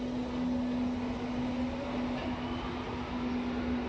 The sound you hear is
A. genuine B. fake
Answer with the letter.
A